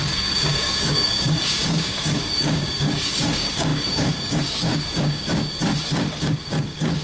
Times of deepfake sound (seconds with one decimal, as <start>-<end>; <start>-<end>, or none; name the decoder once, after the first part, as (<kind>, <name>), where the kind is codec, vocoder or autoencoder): 0.0-5.3 (codec, DAC); 5.9-7.0